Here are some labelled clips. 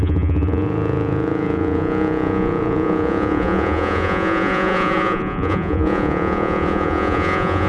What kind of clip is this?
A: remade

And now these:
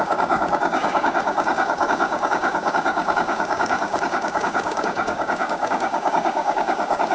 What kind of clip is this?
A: remade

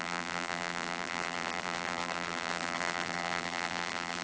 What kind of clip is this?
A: remade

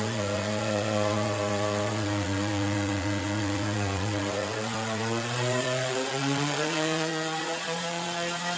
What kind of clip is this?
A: remade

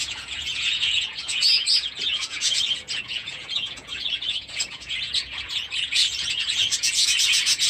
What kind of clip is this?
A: remade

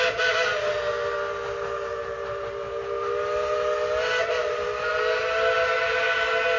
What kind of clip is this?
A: recorded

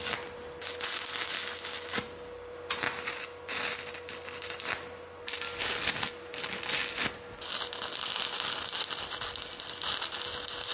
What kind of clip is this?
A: recorded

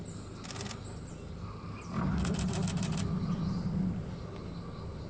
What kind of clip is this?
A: recorded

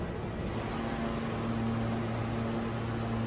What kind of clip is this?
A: recorded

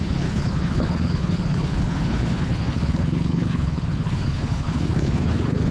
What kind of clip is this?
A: remade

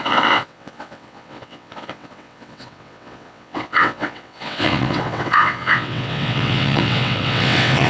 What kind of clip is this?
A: remade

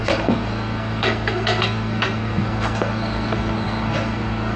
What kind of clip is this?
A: remade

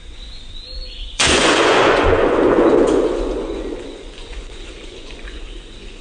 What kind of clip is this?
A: remade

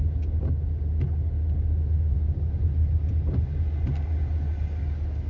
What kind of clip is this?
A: recorded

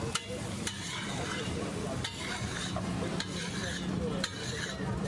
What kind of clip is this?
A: remade